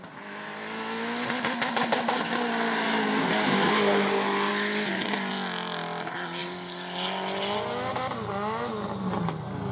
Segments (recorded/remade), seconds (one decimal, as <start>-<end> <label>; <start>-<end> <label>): 0.0-4.5 recorded; 4.5-5.3 remade; 5.3-9.7 recorded